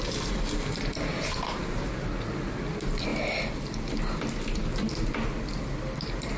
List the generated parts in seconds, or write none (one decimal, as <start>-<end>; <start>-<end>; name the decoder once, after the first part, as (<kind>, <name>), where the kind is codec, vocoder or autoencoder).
1.1-1.9 (vocoder, BigVGAN v2)